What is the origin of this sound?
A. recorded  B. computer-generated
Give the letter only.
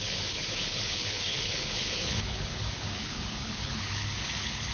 B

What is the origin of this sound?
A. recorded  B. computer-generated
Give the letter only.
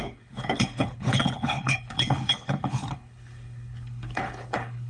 B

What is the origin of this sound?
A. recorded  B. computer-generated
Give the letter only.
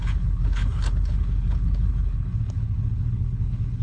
B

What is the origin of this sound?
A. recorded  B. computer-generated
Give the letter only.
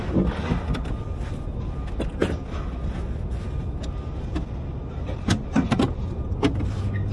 A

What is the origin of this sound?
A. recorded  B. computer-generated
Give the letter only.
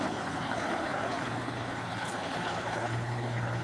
B